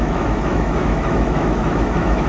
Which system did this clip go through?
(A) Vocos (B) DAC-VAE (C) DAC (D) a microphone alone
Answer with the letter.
B